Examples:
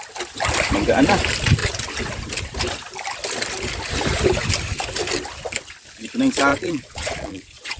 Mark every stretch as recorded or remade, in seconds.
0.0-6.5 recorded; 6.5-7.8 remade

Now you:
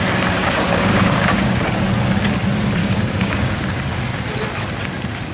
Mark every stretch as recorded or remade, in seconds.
0.0-0.4 recorded; 0.4-1.6 remade; 1.6-2.8 recorded; 2.8-3.6 remade; 3.6-5.3 recorded

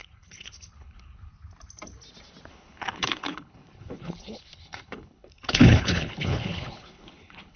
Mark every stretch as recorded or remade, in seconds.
0.0-1.3 remade; 1.3-2.5 recorded; 2.5-7.6 remade

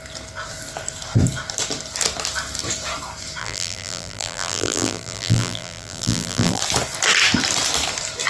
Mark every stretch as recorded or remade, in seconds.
0.0-3.4 recorded; 3.4-6.6 remade; 6.6-8.3 recorded

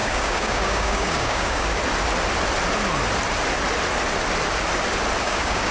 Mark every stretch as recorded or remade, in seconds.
0.0-1.8 remade; 1.8-5.2 recorded; 5.2-5.7 remade

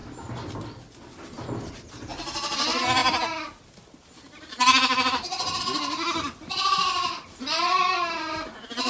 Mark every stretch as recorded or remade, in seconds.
0.0-8.9 recorded

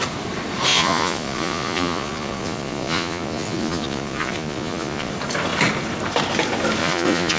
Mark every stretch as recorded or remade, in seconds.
0.0-0.7 recorded; 0.7-5.1 remade; 5.1-6.8 recorded; 6.8-7.4 remade

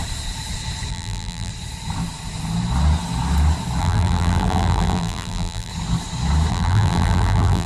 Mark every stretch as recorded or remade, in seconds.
0.0-0.9 recorded; 0.9-1.5 remade; 1.5-3.8 recorded; 3.8-5.7 remade; 5.7-6.5 recorded; 6.5-7.7 remade